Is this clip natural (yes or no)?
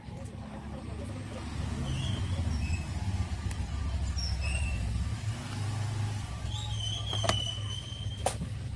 yes